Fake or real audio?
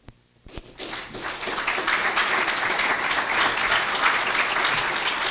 real